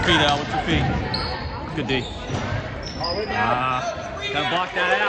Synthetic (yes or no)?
no